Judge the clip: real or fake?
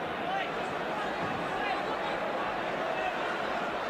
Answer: real